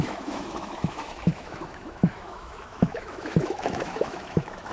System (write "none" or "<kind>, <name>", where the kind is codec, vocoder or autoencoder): autoencoder, DAC-VAE